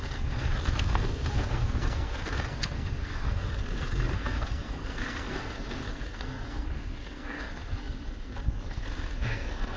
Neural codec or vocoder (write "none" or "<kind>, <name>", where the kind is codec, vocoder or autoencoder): codec, SNAC